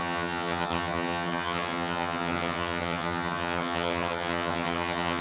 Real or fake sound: fake